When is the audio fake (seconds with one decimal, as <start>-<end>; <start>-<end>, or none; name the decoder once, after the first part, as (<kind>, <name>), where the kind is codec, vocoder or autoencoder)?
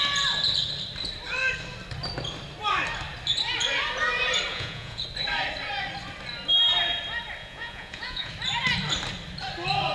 4.5-5.0 (vocoder, Vocos); 7.4-8.3